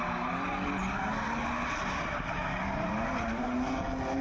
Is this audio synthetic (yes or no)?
no